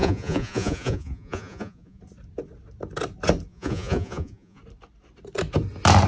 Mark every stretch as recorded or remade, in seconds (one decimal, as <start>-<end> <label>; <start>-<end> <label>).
0.0-2.0 remade; 2.0-3.5 recorded; 3.5-4.6 remade; 4.6-6.1 recorded